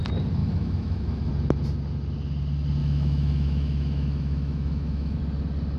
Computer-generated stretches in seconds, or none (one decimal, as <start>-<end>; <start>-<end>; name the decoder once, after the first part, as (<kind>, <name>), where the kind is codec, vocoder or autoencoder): 0.4-1.3 (autoencoder, DAC-VAE); 2.8-5.2